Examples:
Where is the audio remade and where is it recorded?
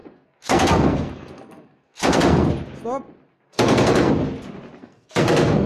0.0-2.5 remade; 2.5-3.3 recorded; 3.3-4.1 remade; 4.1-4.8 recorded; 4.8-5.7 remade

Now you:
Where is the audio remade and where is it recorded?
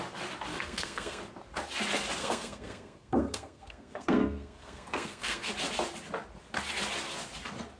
0.0-0.5 recorded; 0.5-1.2 remade; 1.2-2.2 recorded; 2.2-5.5 remade; 5.5-7.8 recorded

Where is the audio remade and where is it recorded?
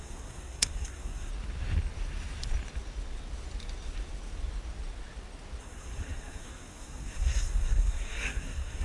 0.0-1.3 remade; 1.3-5.6 recorded; 5.6-8.8 remade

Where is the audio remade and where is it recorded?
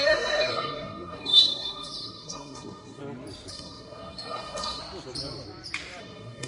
0.0-3.0 remade; 3.0-3.5 recorded; 3.5-4.8 remade; 4.8-6.0 recorded; 6.0-6.5 remade